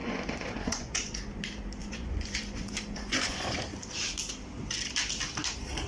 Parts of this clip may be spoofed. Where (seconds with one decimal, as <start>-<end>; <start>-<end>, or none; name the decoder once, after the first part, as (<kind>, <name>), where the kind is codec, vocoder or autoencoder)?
0.0-1.4 (vocoder, Vocos); 1.8-3.5